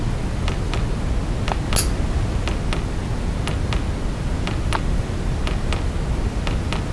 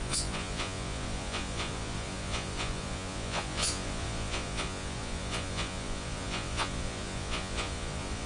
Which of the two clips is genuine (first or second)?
first